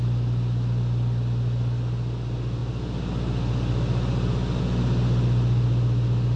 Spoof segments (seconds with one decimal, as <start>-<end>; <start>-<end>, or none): none

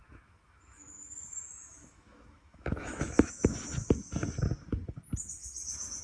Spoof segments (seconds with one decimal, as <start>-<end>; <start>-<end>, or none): 0.0-3.6

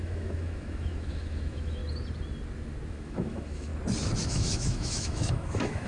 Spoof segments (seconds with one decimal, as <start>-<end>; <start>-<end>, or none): 0.0-1.8; 2.9-3.7; 4.3-5.9

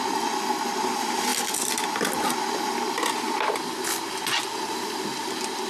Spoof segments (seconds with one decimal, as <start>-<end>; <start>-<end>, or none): none

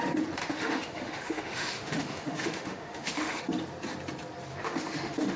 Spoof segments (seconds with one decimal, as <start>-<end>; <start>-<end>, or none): 0.4-3.4; 4.5-5.4